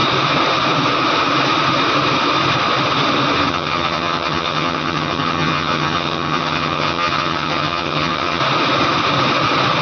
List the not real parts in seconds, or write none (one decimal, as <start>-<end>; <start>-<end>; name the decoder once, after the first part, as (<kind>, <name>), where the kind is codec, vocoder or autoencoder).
3.5-8.4 (vocoder, HiFi-GAN)